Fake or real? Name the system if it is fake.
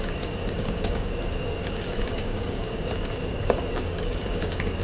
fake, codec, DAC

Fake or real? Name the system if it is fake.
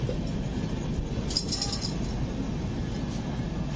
real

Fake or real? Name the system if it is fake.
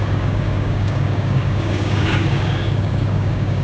fake, codec, DAC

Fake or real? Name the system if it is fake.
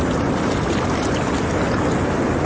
real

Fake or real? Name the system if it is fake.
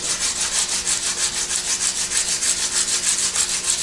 real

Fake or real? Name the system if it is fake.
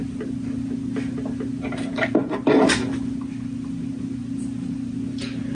real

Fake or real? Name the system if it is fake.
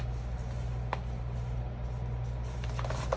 real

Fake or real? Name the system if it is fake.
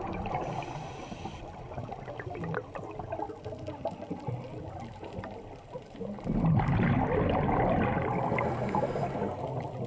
real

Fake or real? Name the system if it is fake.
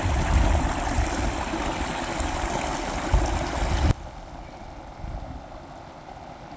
real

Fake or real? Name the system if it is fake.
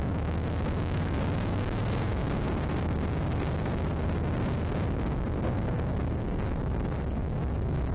fake, codec, DAC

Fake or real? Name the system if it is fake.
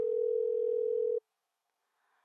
fake, codec, DAC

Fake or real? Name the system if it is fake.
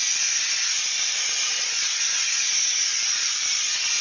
real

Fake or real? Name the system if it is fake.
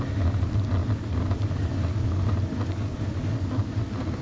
real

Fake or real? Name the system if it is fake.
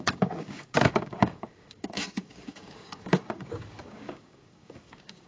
fake, codec, DAC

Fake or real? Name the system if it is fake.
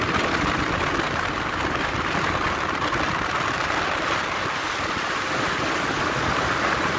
real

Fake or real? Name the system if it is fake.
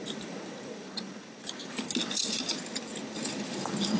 real